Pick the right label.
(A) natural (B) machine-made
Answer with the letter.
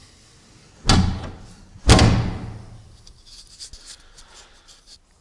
A